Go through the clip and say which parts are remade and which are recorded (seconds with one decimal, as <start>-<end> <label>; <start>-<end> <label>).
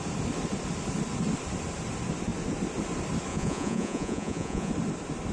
0.0-3.3 recorded; 3.3-4.7 remade; 4.7-5.3 recorded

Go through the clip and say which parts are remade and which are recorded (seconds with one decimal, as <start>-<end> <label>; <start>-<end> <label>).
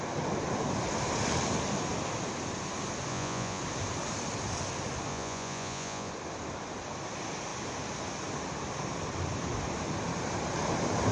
0.0-3.1 recorded; 3.1-3.6 remade; 3.6-5.1 recorded; 5.1-6.1 remade; 6.1-11.1 recorded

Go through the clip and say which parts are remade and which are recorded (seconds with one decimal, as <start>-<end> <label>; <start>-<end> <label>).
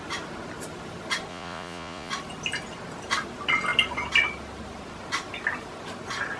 0.0-1.3 recorded; 1.3-2.1 remade; 2.1-6.4 recorded